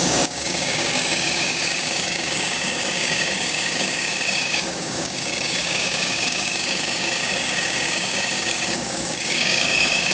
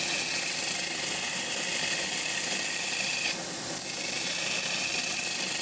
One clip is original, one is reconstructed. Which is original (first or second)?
second